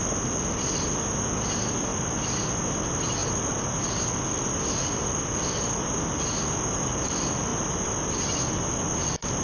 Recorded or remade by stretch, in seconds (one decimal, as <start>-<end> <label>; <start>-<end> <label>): 0.0-9.4 recorded